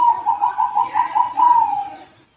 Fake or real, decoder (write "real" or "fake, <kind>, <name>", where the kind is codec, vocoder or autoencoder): fake, vocoder, Vocos